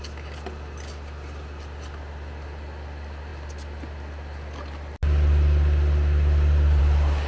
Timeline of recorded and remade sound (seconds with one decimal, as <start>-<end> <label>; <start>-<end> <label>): 0.0-7.3 recorded